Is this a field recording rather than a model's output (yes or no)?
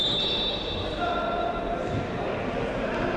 yes